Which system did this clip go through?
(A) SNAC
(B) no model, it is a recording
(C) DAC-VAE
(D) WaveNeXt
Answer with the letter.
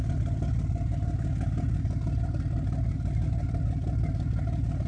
B